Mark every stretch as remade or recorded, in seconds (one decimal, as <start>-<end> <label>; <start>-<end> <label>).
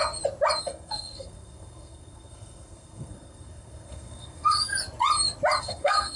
0.0-0.6 recorded; 0.6-4.7 remade; 4.7-5.6 recorded; 5.6-6.2 remade